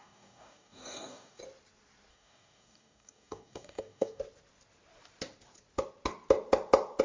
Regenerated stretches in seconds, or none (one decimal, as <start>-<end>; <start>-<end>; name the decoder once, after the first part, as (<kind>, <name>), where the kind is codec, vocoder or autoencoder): 0.0-1.4 (codec, DAC); 2.1-4.2